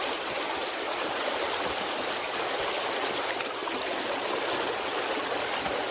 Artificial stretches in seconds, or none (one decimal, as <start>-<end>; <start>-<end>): 0.6-2.6; 3.6-4.4